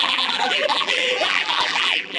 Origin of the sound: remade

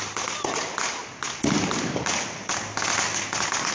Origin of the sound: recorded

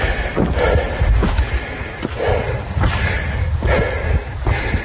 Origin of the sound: recorded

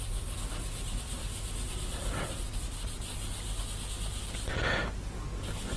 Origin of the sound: recorded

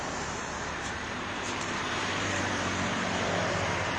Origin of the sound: remade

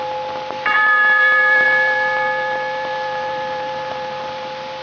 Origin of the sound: recorded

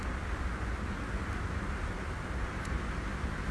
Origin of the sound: recorded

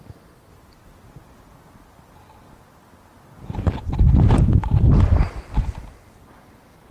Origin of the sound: recorded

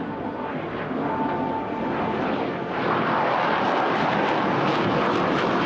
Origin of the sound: recorded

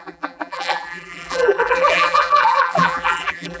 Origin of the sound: remade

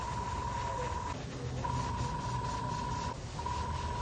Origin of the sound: recorded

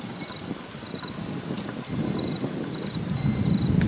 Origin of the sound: remade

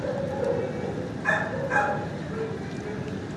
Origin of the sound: recorded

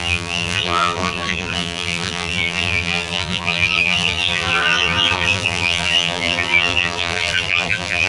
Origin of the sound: remade